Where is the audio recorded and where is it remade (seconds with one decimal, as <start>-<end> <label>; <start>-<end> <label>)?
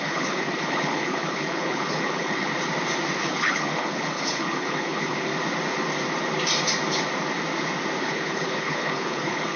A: 0.0-2.5 remade; 2.5-3.2 recorded; 3.2-5.3 remade; 5.3-8.0 recorded; 8.0-9.6 remade